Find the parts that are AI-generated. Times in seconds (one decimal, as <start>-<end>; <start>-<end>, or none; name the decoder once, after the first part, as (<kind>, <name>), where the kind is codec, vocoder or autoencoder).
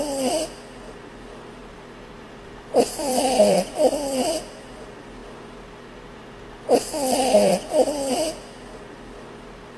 1.6-4.8 (vocoder, BigVGAN v2)